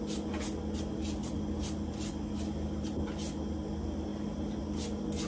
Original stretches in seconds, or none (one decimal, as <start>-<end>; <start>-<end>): 0.0-5.3